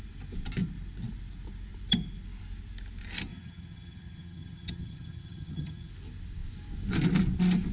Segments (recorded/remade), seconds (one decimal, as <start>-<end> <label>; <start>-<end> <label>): 0.0-3.3 recorded; 3.3-5.9 remade; 5.9-7.7 recorded